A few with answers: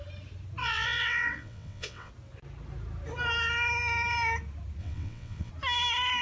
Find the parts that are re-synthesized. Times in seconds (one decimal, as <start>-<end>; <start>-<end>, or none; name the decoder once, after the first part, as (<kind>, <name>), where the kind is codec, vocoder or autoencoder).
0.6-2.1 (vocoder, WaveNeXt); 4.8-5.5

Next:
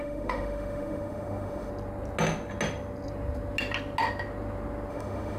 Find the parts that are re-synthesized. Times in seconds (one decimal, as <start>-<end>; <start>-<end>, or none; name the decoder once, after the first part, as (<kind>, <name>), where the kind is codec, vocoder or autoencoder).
0.0-1.7 (autoencoder, DAC-VAE); 4.9-5.4

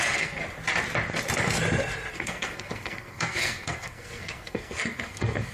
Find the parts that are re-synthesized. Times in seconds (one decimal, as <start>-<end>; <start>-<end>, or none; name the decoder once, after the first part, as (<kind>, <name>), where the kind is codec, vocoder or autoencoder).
0.0-0.4 (codec, SNAC); 2.1-5.5

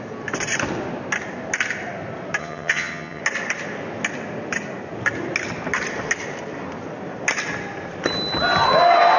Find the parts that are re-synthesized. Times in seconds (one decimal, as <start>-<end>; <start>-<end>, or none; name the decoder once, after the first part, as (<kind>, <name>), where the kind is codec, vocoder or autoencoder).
2.4-3.2 (vocoder, HiFi-GAN)

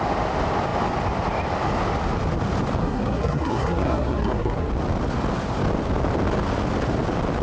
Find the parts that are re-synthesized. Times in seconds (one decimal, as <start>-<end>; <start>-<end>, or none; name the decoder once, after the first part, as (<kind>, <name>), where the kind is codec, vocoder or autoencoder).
2.8-4.7 (codec, SNAC)

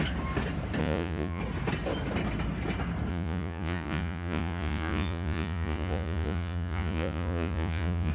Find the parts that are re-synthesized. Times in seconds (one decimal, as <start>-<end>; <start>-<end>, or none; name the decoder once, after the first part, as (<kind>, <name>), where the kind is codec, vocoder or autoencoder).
0.8-1.4 (vocoder, Vocos); 3.1-8.1